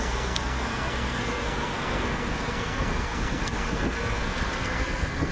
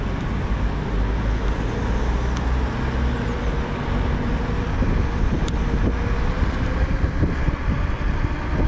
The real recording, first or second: second